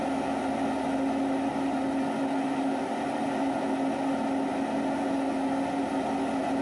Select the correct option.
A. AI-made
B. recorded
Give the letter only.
B